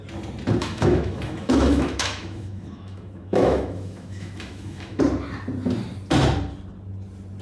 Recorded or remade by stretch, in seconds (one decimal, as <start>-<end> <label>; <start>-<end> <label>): 0.0-0.6 recorded; 0.6-5.0 remade; 5.0-7.4 recorded